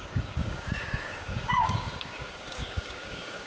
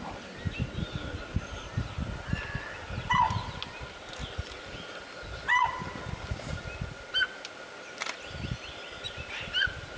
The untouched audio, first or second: second